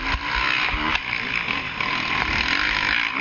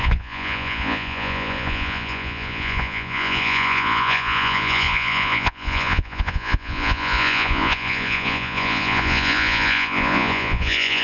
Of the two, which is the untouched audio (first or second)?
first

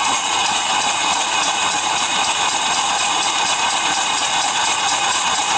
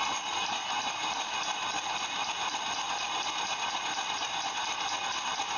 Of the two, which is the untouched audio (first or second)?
second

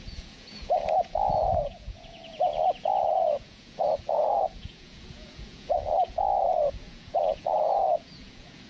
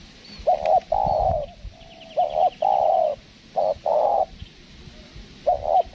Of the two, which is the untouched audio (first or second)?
second